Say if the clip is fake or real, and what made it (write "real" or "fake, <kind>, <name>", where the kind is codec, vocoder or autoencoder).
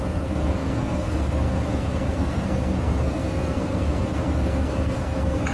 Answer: fake, codec, SNAC